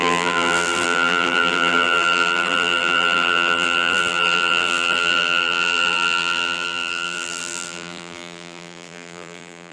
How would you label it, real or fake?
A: fake